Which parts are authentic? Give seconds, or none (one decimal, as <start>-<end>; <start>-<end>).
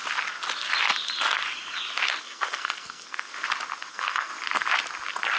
0.0-2.2; 3.3-3.9; 4.3-5.4